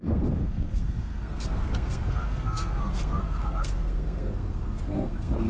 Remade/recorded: remade